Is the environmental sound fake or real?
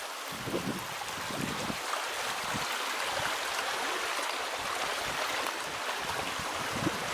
real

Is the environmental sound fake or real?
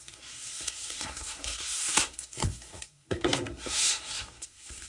fake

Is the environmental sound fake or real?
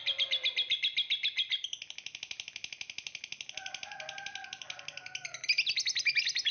real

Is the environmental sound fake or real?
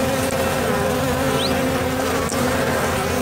real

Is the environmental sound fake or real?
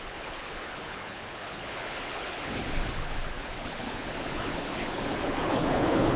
fake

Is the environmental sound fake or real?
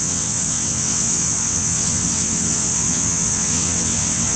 fake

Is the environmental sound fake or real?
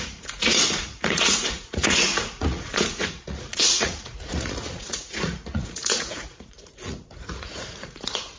fake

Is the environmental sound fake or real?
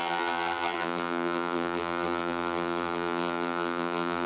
fake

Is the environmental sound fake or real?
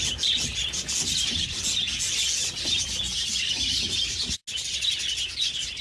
real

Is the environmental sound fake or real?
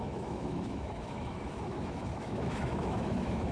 fake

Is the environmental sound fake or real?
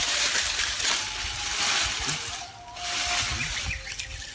real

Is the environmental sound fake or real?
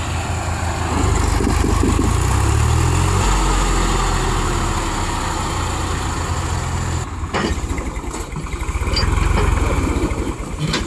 real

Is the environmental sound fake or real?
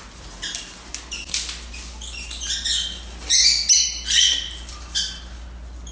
real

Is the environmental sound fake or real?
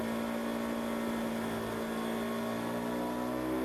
real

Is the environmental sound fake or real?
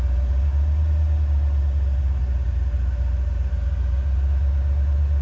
real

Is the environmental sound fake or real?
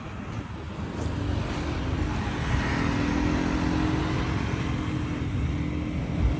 real